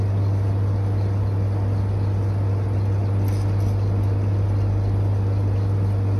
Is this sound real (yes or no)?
yes